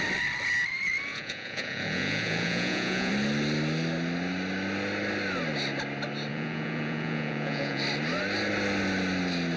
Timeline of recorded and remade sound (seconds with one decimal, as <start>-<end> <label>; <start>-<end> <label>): 0.0-1.1 recorded; 1.1-3.1 remade; 3.1-6.3 recorded; 6.3-7.8 remade; 7.8-9.6 recorded